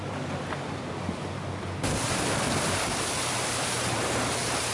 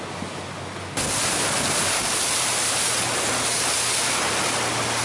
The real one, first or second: second